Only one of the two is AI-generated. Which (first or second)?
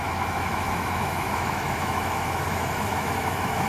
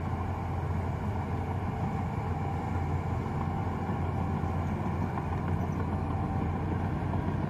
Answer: first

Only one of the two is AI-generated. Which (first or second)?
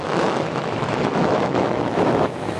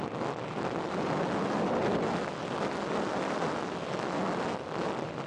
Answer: first